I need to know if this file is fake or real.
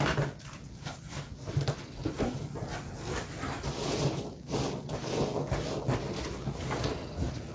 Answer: real